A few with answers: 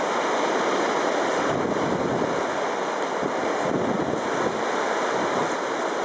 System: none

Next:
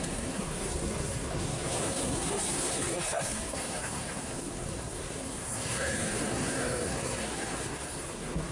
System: codec, SNAC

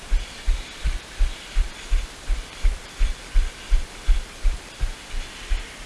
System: vocoder, BigVGAN v2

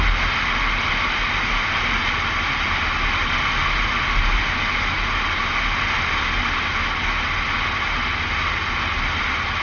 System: none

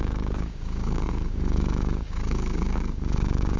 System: codec, DAC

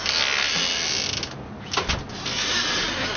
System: none